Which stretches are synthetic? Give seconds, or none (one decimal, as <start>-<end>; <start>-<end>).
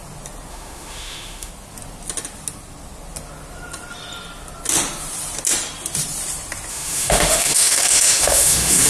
0.5-1.5; 6.7-8.9